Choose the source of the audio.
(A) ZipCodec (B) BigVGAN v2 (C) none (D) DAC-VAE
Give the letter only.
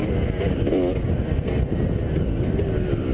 C